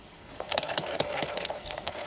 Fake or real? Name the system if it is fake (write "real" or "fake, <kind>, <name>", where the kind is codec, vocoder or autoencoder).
fake, codec, SNAC